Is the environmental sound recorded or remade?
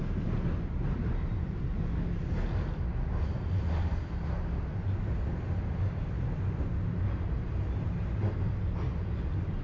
recorded